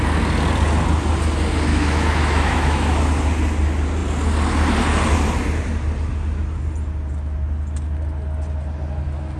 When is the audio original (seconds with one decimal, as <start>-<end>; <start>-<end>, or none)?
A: 0.0-1.7; 3.0-9.4